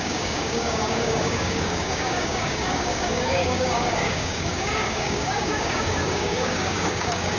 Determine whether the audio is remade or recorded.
remade